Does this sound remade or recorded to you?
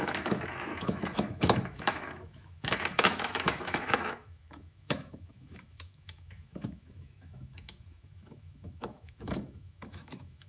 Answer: remade